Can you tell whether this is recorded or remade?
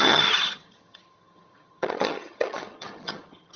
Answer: remade